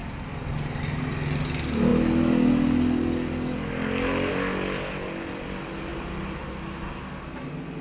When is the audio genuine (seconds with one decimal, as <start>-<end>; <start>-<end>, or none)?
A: 0.0-7.8